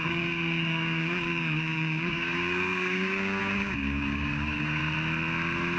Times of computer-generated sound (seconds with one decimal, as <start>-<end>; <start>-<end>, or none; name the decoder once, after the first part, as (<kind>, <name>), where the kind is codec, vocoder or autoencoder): 0.0-4.8 (codec, DAC)

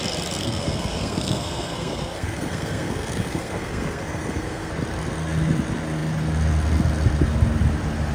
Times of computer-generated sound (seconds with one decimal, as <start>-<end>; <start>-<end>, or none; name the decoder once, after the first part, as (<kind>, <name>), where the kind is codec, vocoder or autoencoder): 0.4-4.7 (codec, SNAC)

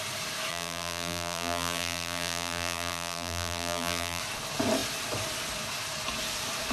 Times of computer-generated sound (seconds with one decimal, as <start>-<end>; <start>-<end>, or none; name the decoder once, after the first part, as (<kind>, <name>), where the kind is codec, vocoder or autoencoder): 0.5-4.2 (vocoder, BigVGAN v2)

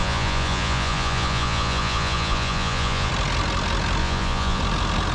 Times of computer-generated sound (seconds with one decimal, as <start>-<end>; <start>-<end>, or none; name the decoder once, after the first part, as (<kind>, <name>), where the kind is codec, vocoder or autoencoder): 0.0-3.1 (vocoder, Vocos); 4.0-4.6

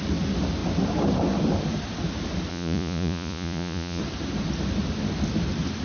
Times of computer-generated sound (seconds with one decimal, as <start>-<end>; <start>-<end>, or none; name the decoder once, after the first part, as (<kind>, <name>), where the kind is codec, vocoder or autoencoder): 2.5-4.0 (vocoder, Vocos)